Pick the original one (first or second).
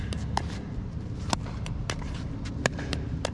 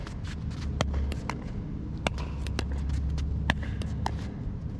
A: second